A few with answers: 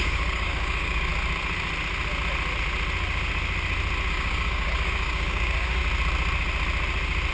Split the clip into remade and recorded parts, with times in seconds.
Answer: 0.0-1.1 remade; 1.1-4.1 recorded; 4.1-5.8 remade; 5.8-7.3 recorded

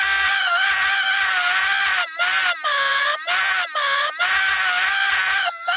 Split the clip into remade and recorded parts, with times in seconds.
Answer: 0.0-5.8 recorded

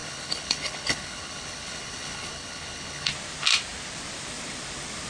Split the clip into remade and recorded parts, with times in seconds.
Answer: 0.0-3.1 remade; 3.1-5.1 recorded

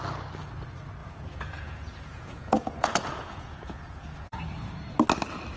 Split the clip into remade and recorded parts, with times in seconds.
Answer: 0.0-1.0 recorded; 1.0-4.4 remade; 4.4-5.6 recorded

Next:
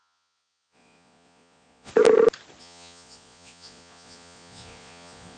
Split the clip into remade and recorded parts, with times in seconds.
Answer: 0.0-1.9 remade; 1.9-2.6 recorded; 2.6-5.4 remade

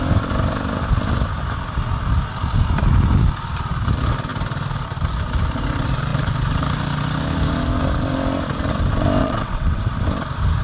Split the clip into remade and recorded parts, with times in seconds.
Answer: 0.0-9.2 recorded; 9.2-9.8 remade; 9.8-10.6 recorded

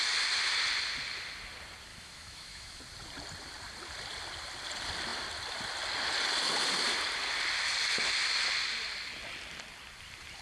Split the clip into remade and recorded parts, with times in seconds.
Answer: 0.0-1.9 recorded; 1.9-2.8 remade; 2.8-10.4 recorded